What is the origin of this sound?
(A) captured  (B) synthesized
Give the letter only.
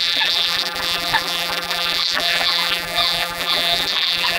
B